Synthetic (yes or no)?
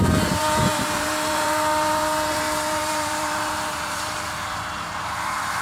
yes